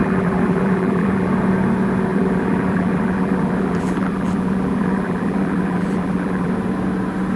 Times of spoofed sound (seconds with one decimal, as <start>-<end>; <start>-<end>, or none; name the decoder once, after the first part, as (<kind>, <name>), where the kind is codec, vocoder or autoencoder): 0.0-1.3 (vocoder, BigVGAN v2); 2.1-6.5